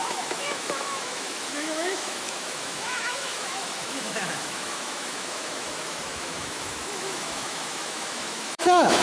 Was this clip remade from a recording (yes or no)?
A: yes